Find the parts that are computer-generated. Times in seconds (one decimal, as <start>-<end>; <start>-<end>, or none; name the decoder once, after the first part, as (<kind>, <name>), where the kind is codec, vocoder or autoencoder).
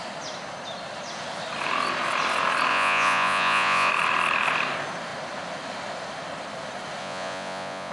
2.7-3.9 (vocoder, Vocos); 7.0-7.9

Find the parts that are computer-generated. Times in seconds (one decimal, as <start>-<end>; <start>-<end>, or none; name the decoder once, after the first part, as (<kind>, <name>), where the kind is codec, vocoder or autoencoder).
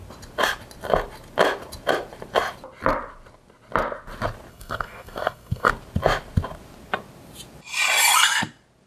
4.5-5.7 (codec, SNAC)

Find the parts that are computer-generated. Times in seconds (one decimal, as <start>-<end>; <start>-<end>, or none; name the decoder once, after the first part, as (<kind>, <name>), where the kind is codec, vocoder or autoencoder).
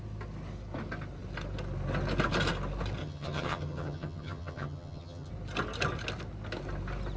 3.0-5.3 (vocoder, HiFi-GAN)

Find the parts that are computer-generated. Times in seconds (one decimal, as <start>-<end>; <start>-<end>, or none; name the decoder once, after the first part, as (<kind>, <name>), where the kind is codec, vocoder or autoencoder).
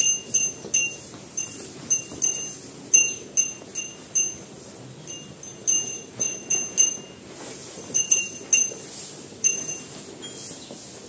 7.6-8.2 (vocoder, Vocos)